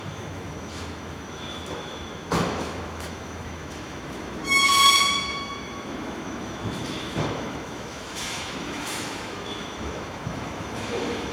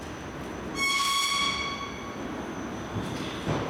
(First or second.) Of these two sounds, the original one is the second